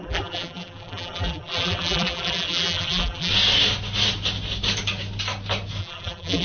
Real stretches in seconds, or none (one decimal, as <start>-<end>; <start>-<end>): 3.3-5.8